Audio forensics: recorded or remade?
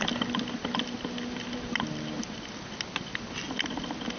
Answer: recorded